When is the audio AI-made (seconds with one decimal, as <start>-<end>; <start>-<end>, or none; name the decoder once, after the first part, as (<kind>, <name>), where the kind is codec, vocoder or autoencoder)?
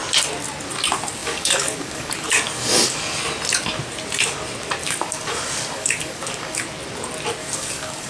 1.2-3.2 (codec, DAC); 4.8-6.6; 7.4-8.1